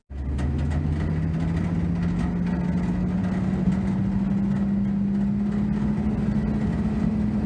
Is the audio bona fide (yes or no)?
yes